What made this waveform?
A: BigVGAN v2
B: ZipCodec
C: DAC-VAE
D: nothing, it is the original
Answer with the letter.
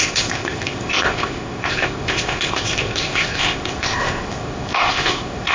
B